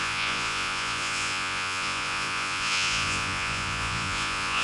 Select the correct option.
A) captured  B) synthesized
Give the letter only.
B